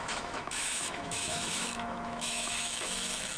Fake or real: fake